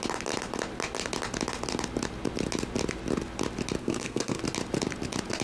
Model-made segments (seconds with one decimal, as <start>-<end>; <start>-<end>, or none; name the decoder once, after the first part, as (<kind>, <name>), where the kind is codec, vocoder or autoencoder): 3.8-4.4 (codec, SNAC)